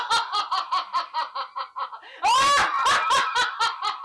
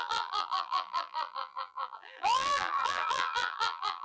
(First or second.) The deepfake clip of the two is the second